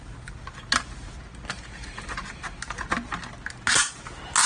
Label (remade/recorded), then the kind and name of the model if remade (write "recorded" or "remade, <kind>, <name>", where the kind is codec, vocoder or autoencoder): recorded